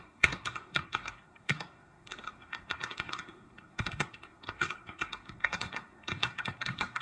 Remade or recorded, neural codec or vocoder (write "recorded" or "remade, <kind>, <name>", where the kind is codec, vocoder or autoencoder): remade, codec, SNAC